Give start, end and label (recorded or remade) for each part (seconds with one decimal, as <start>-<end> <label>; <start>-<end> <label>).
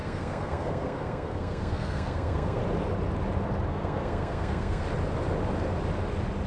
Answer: 0.0-2.6 remade; 2.6-3.7 recorded; 3.7-4.8 remade; 4.8-6.5 recorded